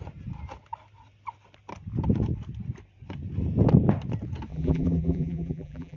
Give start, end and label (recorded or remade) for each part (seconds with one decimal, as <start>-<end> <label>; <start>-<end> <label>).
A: 0.0-4.5 recorded; 4.5-6.0 remade